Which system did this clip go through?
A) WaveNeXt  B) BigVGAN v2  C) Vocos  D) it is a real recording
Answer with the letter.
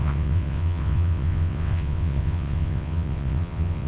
A